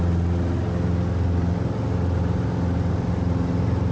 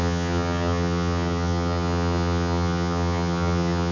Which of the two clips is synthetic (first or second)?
second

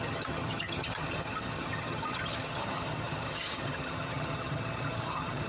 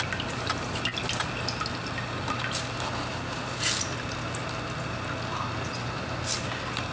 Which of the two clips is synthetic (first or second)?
first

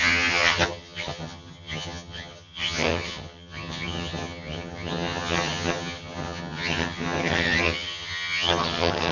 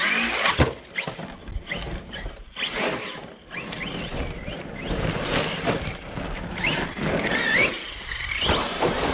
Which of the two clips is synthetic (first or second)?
first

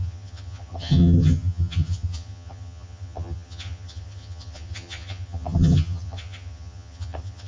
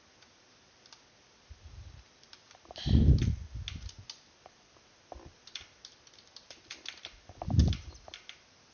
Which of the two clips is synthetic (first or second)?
first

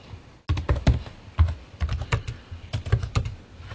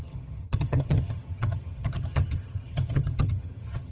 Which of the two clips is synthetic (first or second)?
second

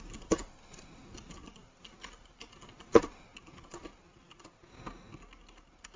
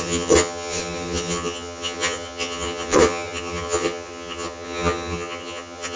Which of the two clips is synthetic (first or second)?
second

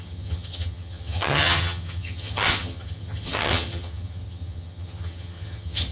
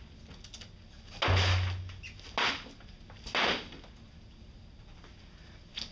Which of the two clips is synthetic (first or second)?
first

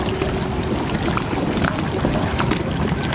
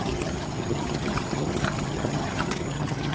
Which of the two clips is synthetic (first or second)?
second